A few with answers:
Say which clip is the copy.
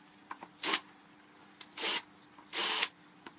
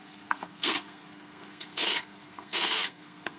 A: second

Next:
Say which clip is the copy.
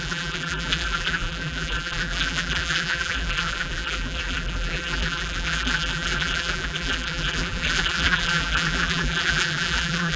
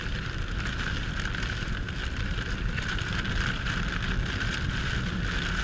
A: first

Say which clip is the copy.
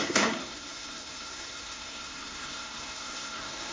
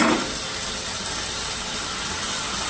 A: first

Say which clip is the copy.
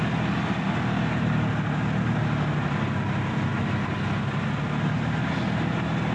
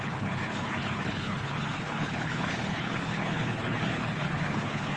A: second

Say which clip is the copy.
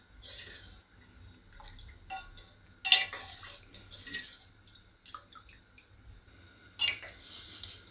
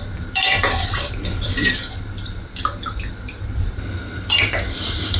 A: second